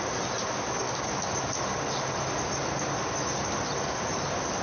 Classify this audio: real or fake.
real